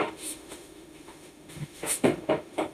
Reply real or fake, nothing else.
fake